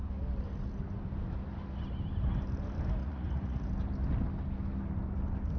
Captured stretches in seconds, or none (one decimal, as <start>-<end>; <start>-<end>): 0.0-3.0; 3.7-5.6